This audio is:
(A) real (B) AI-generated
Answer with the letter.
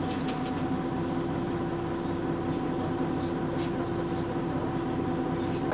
A